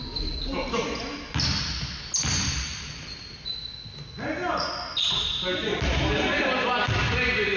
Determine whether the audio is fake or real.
real